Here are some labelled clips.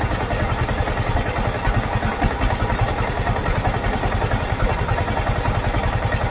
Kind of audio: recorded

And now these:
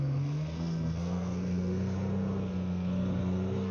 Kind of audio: remade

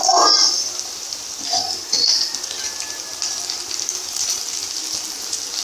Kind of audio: recorded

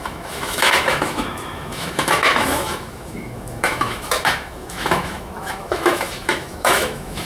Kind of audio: remade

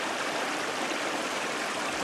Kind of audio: recorded